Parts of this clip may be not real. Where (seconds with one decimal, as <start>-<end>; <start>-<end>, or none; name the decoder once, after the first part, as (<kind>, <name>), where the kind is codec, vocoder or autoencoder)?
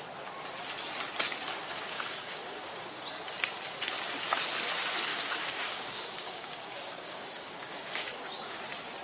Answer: 1.6-3.0 (codec, DAC); 5.1-8.6